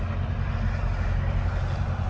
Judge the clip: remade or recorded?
recorded